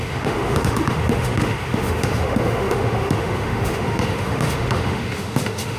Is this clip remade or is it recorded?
remade